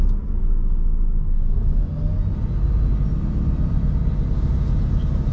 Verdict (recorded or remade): recorded